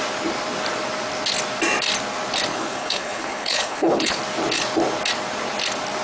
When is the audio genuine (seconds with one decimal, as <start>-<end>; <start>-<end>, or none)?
0.0-2.5; 4.2-6.0